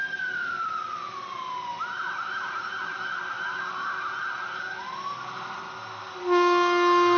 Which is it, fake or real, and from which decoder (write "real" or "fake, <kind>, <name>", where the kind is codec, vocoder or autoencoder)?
real